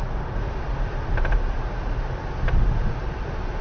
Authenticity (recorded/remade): remade